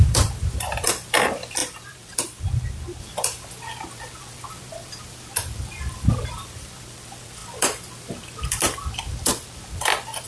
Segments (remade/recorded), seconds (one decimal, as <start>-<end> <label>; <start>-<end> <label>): 0.0-10.3 remade